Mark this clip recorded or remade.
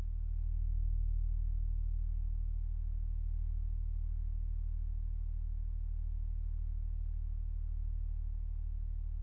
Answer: recorded